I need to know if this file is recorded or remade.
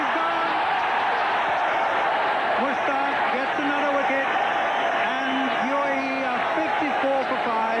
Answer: recorded